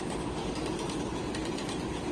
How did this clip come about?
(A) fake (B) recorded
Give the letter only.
B